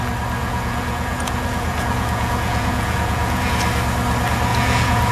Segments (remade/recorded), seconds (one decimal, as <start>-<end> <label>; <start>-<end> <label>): 0.0-0.4 recorded; 0.4-3.5 remade; 3.5-4.5 recorded; 4.5-5.1 remade